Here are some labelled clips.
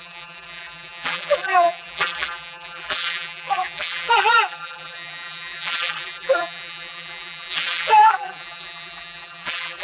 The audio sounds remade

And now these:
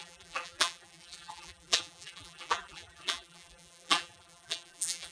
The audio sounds remade